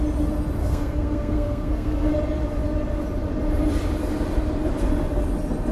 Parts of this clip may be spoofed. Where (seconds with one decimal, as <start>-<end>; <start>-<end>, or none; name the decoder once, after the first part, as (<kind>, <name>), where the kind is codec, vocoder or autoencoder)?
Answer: 0.6-2.1 (codec, SNAC)